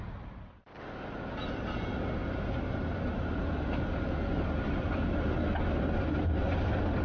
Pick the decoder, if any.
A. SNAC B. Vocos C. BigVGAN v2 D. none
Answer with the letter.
D